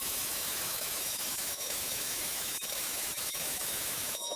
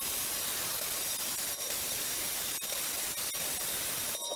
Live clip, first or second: second